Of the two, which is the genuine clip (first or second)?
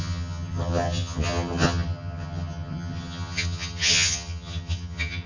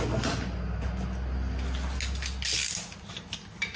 second